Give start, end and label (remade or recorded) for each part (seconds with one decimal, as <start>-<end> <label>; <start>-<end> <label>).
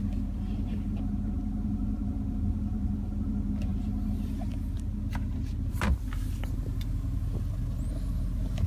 0.0-8.7 recorded